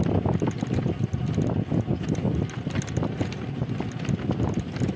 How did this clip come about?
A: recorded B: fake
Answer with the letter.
A